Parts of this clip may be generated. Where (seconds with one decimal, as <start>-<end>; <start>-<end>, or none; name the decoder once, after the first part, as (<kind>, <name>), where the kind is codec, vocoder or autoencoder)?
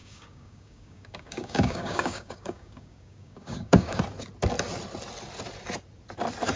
0.0-4.0 (codec, DAC)